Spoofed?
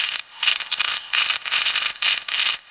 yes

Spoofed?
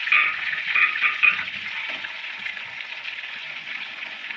yes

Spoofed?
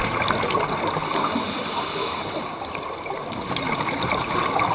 no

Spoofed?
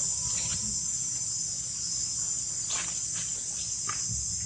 no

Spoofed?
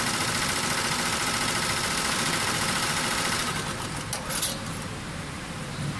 no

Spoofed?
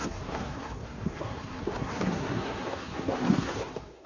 yes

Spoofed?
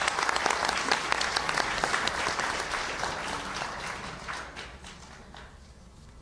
no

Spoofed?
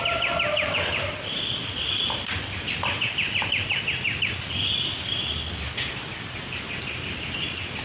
no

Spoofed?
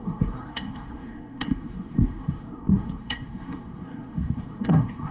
yes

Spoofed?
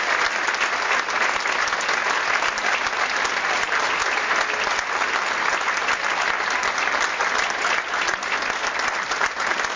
no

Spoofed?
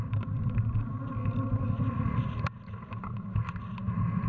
no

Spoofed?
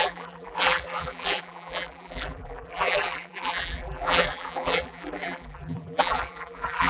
yes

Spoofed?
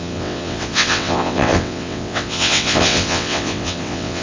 yes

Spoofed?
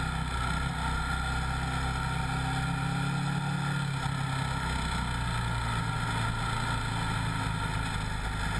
no